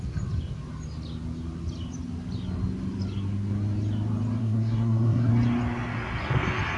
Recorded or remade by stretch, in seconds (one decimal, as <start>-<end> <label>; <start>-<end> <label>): 0.0-4.4 recorded; 4.4-5.3 remade; 5.3-6.8 recorded